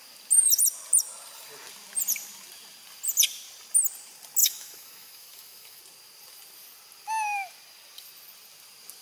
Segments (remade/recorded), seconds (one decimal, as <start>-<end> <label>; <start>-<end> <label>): 0.0-4.4 recorded; 4.4-5.8 remade; 5.8-9.0 recorded